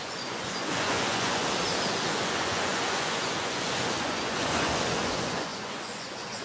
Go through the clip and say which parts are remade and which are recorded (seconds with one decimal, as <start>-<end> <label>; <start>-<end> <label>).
0.0-1.4 remade; 1.4-1.9 recorded; 1.9-6.4 remade